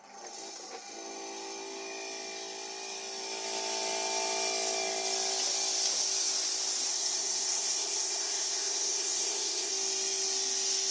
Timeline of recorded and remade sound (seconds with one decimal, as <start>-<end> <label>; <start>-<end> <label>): 0.0-6.9 recorded; 6.9-9.7 remade; 9.7-10.9 recorded